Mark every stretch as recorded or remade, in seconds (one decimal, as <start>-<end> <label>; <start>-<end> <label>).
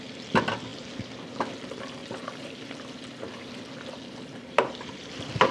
0.0-2.0 recorded; 2.0-5.5 remade